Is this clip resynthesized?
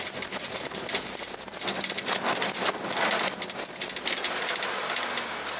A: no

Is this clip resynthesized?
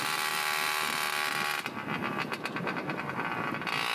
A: no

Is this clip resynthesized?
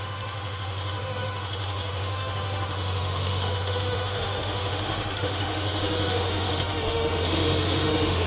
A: yes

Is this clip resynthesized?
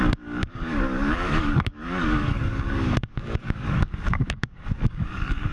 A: yes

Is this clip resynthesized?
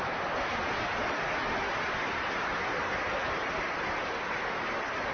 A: no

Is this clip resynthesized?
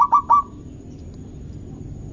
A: no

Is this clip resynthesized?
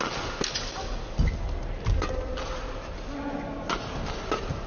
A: no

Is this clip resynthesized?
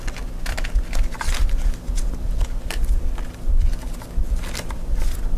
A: no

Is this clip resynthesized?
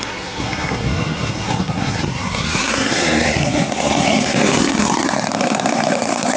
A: yes